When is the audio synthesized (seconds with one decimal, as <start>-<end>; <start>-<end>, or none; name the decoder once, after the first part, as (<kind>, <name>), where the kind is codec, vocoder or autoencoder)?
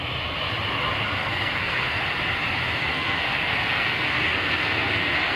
1.2-2.0 (codec, SNAC); 2.8-5.4